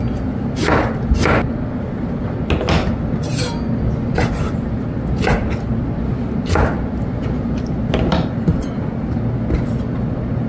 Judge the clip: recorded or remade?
recorded